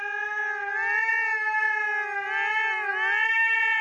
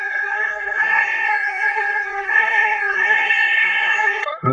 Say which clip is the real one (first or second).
first